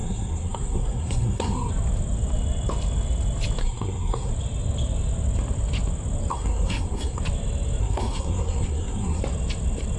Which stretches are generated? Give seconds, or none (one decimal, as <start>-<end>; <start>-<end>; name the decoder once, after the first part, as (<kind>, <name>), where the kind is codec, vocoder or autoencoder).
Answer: 0.0-1.7 (codec, SNAC); 3.6-4.3; 6.3-7.2; 7.8-9.2